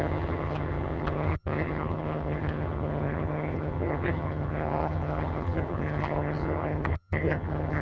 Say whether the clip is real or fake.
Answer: fake